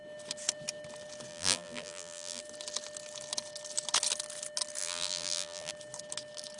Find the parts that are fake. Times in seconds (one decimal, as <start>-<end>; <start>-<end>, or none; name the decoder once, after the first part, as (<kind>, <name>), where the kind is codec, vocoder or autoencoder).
1.3-2.4 (vocoder, BigVGAN v2); 4.8-5.7